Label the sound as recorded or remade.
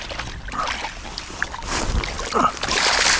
recorded